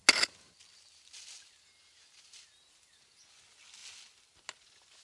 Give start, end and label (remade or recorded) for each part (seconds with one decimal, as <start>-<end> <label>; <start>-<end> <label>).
0.0-5.0 recorded